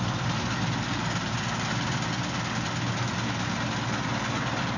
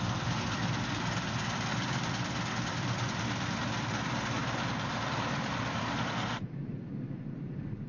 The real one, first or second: first